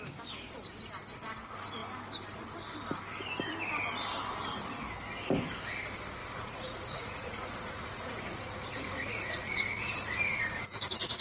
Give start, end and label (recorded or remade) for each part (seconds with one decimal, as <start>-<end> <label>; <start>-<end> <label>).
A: 0.0-6.2 recorded; 6.2-11.2 remade